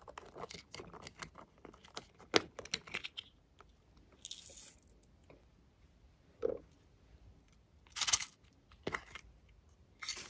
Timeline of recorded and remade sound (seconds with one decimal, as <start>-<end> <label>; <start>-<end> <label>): 0.0-10.3 recorded